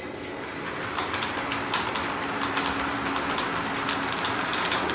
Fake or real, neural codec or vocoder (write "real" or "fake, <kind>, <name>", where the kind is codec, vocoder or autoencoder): real